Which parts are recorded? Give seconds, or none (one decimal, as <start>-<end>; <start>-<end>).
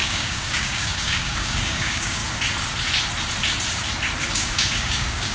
2.2-4.3